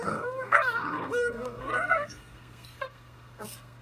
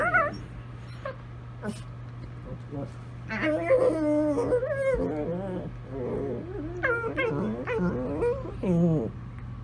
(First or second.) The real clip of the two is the second